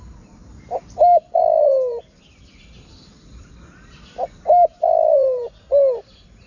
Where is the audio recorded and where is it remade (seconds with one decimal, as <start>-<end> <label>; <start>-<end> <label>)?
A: 0.0-1.4 recorded; 1.4-2.4 remade; 2.4-4.7 recorded; 4.7-5.7 remade; 5.7-6.5 recorded